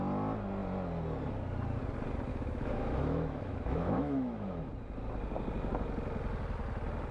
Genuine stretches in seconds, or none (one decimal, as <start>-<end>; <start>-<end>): 0.0-2.3; 4.7-7.1